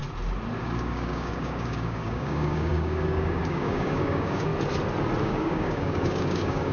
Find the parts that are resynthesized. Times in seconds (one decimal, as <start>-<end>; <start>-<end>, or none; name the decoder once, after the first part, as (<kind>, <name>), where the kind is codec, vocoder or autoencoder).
0.6-4.5 (codec, DAC); 5.2-6.7